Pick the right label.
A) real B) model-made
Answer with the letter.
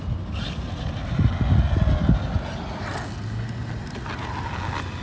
A